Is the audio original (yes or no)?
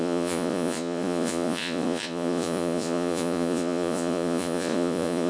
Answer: no